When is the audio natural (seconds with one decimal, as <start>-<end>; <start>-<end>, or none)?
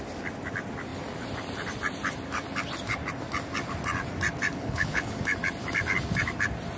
0.0-4.5; 5.1-6.8